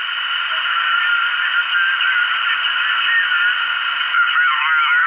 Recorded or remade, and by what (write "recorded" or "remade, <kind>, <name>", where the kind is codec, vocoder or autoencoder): recorded